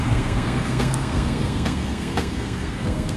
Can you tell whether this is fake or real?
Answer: fake